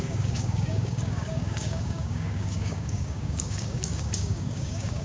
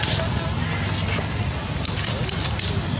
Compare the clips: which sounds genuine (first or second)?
second